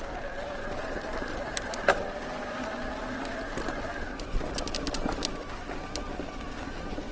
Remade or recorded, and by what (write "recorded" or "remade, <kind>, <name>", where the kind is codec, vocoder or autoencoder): recorded